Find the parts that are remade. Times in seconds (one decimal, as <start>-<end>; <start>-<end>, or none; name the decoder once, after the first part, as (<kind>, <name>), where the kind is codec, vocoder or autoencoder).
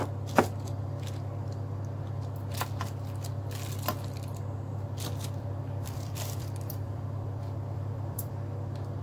4.7-8.3 (vocoder, BigVGAN v2)